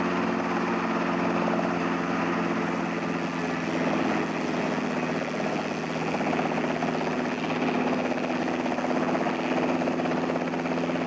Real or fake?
real